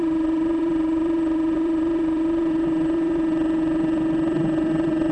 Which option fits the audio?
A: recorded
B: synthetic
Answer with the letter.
B